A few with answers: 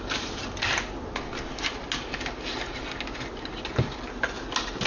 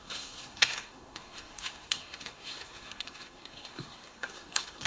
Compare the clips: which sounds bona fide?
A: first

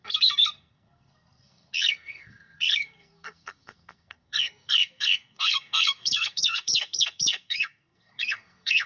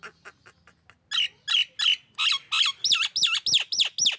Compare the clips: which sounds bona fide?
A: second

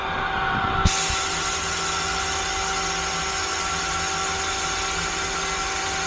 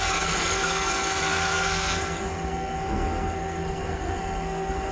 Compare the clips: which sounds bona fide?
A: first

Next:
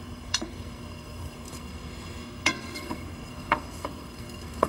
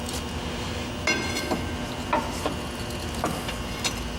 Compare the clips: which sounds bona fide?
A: second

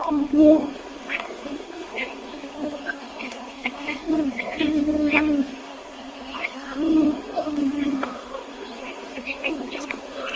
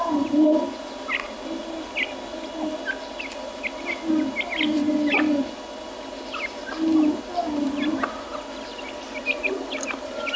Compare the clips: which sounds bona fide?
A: second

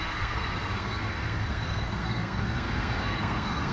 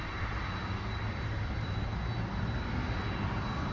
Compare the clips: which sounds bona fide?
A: second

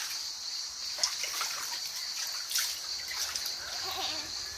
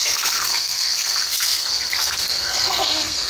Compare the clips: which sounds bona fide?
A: first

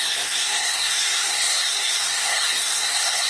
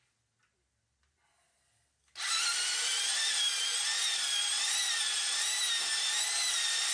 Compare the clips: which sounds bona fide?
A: second